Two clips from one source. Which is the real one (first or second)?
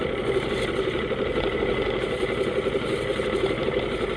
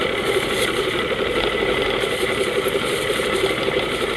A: first